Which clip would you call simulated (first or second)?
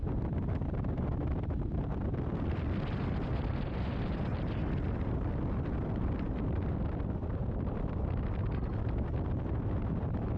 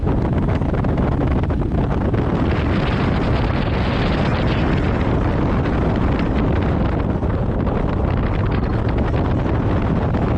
first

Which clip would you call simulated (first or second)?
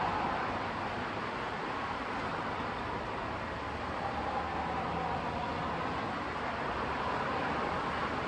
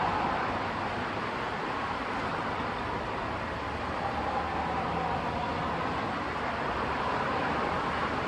second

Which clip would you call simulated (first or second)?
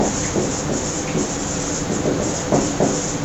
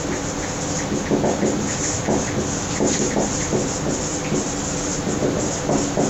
first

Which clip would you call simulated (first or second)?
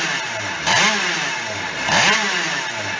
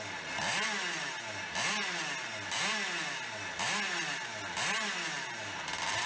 first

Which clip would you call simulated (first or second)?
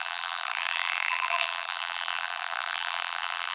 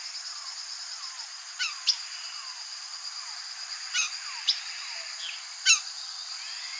first